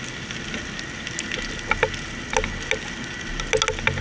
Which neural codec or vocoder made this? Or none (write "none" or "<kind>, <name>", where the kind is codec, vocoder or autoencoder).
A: none